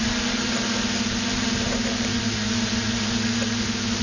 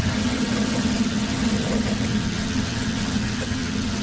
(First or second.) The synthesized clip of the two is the second